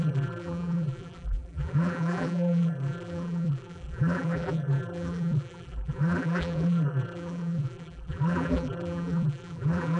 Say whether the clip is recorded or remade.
remade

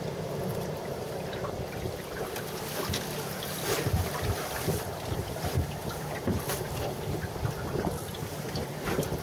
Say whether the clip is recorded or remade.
remade